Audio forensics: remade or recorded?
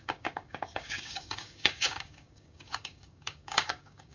remade